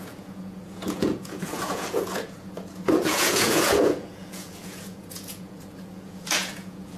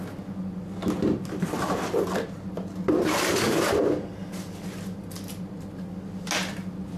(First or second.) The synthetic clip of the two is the first